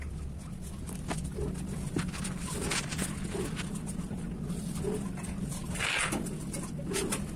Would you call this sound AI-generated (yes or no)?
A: no